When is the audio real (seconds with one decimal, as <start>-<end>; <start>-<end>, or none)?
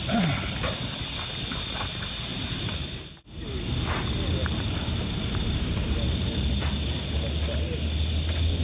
0.0-2.3; 3.0-4.4; 6.6-8.6